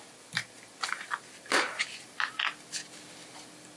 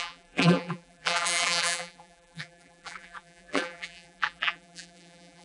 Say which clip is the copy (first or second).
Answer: second